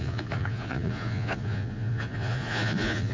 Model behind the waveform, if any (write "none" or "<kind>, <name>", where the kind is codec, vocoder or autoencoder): vocoder, Vocos